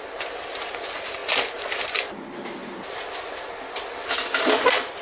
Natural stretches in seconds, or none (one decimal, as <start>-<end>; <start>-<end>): 0.0-5.0